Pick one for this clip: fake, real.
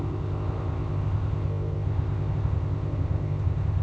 fake